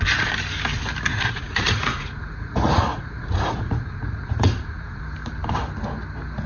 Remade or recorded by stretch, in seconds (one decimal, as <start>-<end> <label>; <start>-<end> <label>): 0.0-1.1 recorded; 1.1-5.0 remade; 5.0-6.5 recorded